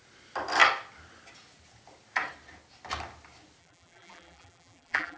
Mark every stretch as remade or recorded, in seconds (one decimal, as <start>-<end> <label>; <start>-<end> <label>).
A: 0.0-3.6 recorded; 3.6-5.2 remade